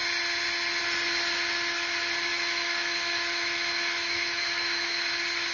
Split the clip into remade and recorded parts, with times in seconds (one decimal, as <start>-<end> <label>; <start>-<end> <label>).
0.0-2.3 recorded; 2.3-5.1 remade; 5.1-5.5 recorded